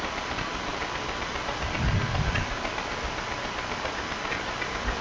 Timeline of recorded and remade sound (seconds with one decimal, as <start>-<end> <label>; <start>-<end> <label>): 0.0-5.0 recorded